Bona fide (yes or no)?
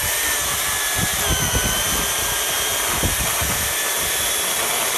yes